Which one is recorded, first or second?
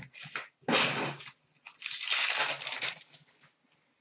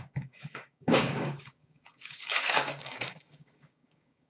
first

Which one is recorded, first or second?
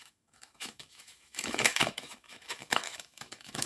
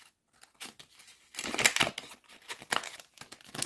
second